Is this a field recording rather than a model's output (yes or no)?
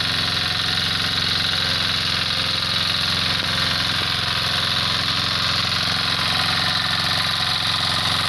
yes